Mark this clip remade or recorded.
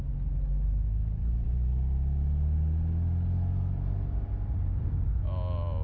recorded